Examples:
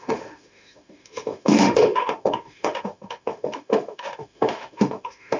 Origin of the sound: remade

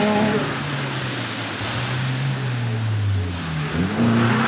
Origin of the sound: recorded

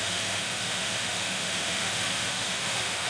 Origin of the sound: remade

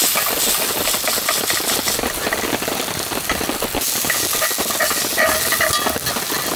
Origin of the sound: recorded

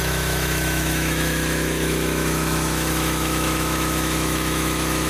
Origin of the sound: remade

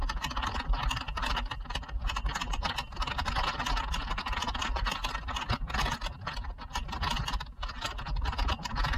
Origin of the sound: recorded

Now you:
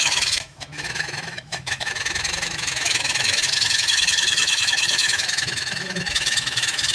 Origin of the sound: remade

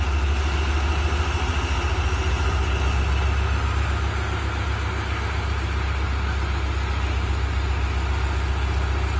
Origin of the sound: recorded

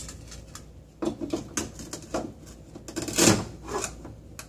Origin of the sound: recorded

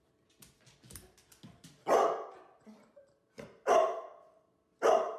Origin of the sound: recorded